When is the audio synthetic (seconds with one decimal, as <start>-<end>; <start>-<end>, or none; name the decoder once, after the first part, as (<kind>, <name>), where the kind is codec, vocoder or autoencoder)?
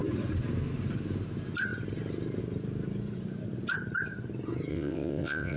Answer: 4.7-5.6 (vocoder, WaveNeXt)